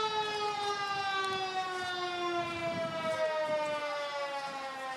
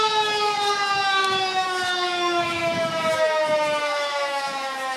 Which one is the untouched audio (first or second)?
first